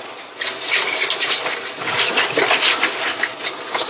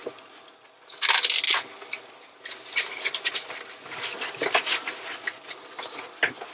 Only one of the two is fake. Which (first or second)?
first